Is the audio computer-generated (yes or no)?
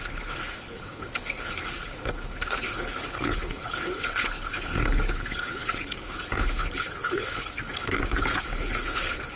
yes